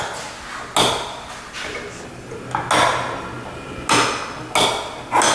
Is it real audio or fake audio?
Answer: real